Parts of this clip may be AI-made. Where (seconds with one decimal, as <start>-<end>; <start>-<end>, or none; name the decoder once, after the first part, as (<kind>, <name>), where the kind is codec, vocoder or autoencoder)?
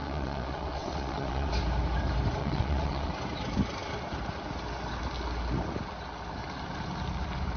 0.0-1.5 (vocoder, WaveNeXt); 2.4-3.1